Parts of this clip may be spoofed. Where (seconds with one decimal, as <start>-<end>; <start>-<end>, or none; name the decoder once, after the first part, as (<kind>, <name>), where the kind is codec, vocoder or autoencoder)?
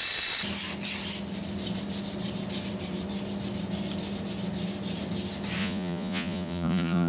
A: 5.6-7.1 (vocoder, Vocos)